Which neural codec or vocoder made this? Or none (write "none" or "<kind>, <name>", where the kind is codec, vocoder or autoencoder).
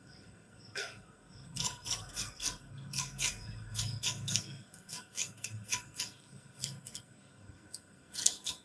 codec, SNAC